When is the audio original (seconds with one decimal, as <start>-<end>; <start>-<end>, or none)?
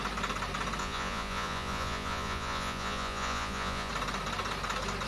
0.0-0.8; 3.9-5.1